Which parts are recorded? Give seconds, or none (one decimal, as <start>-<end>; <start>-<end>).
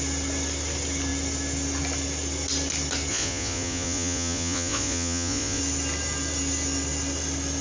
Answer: 0.0-3.1; 5.6-7.6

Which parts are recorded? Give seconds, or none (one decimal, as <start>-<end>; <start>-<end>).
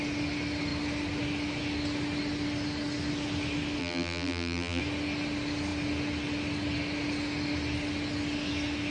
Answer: 0.0-3.8; 4.8-8.9